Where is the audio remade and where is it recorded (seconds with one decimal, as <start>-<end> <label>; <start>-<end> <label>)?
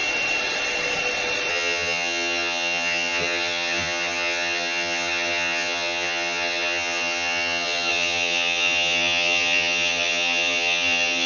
0.0-1.5 recorded; 1.5-11.3 remade